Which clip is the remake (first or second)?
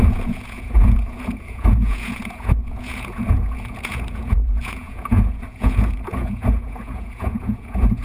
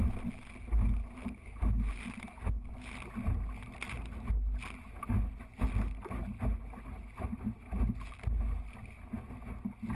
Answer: first